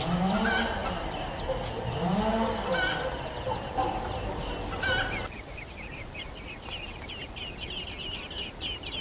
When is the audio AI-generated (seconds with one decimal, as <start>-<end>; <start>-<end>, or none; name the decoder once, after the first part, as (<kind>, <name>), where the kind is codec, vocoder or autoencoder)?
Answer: none